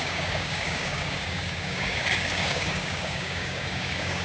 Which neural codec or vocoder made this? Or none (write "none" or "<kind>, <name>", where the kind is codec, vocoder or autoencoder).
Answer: codec, DAC